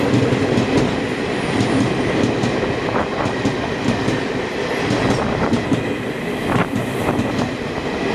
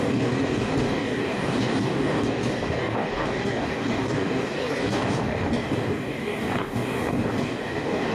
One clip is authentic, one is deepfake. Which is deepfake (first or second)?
second